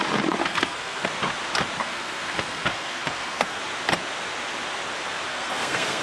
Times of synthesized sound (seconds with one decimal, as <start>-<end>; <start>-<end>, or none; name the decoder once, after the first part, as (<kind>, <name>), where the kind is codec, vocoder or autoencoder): 0.4-1.0 (codec, SNAC); 1.8-3.6; 5.3-6.0